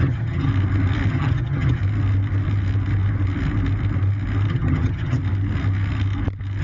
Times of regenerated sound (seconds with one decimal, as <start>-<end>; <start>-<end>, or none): 0.0-0.5; 1.1-1.8; 4.5-5.2

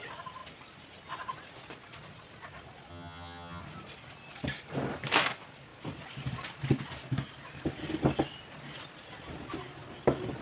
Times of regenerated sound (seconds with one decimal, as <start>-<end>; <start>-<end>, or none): 2.9-3.6